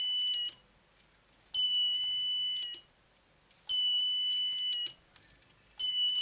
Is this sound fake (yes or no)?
no